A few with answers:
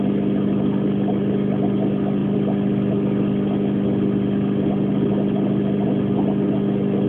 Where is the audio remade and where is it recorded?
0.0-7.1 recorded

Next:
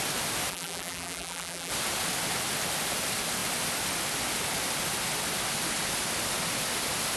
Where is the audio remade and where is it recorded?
0.0-0.5 recorded; 0.5-1.7 remade; 1.7-7.2 recorded

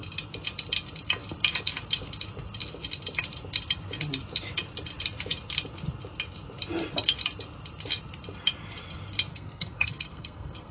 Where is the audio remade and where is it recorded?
0.0-9.3 recorded; 9.3-10.7 remade

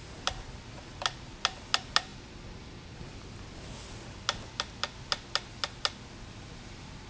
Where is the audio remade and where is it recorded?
0.0-7.1 recorded

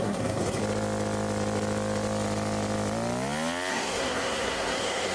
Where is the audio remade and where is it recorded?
0.0-0.6 remade; 0.6-3.7 recorded; 3.7-5.1 remade

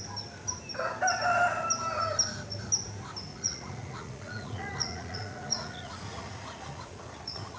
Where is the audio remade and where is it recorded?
0.0-3.3 recorded; 3.3-7.6 remade

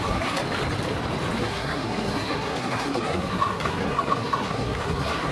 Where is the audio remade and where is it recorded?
0.0-0.4 remade; 0.4-1.4 recorded; 1.4-5.3 remade